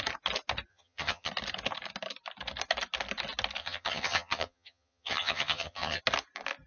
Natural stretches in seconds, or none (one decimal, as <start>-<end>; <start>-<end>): 0.0-0.7; 1.3-3.6; 6.0-6.7